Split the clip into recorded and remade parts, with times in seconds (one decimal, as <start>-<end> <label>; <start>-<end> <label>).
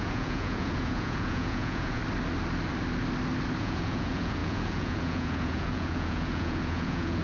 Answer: 0.0-2.0 remade; 2.0-3.6 recorded; 3.6-7.2 remade